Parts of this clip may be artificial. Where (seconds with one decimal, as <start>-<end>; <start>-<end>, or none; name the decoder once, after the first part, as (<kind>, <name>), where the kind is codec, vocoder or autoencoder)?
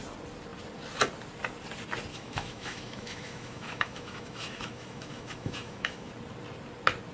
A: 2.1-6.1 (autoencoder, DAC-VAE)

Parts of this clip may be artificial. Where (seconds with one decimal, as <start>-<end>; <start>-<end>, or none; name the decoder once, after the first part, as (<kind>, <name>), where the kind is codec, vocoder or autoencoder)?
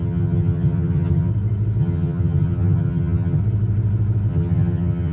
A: 0.0-1.3 (vocoder, HiFi-GAN); 1.8-3.4; 4.3-5.1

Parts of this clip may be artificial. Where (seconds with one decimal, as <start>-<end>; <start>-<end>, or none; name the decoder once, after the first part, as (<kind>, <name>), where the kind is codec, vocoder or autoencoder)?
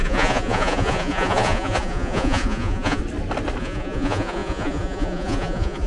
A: 0.0-3.0 (vocoder, Vocos); 3.6-5.9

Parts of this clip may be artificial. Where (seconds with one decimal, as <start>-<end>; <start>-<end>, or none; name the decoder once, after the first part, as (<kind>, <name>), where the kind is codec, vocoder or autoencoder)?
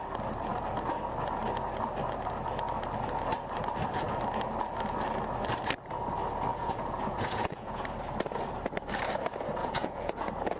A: 6.5-7.8 (vocoder, Vocos); 9.6-10.1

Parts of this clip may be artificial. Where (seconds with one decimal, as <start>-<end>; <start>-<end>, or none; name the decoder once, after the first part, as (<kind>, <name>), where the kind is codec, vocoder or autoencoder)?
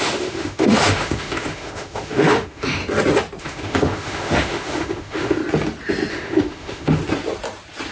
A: 0.0-2.8 (autoencoder, DAC-VAE); 3.4-5.4; 6.1-7.0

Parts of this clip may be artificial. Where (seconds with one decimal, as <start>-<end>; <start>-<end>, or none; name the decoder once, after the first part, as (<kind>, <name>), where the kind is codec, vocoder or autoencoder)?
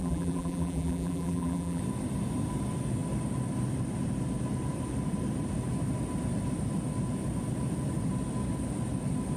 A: 0.0-1.8 (vocoder, BigVGAN v2)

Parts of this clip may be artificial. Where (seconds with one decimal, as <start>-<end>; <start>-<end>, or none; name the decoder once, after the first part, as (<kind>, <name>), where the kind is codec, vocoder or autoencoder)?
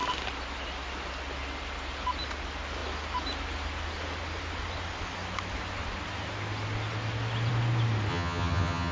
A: 8.1-8.9 (vocoder, HiFi-GAN)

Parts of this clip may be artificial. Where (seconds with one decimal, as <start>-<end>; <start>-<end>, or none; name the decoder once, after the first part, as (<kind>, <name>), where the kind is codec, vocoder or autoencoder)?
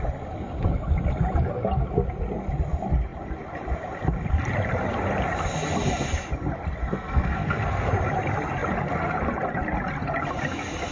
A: 6.8-7.9 (codec, SNAC)